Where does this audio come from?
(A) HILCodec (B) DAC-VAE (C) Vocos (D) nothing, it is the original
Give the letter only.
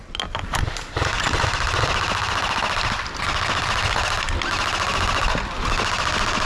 D